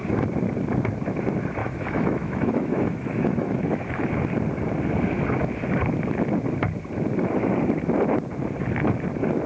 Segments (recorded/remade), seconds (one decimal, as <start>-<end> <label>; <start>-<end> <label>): 0.0-1.6 recorded; 1.6-4.1 remade; 4.1-9.5 recorded